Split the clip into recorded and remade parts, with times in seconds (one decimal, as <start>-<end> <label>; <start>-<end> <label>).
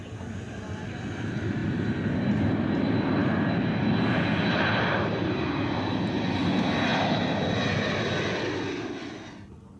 0.0-9.8 recorded